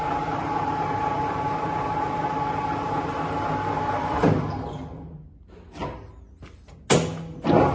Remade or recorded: recorded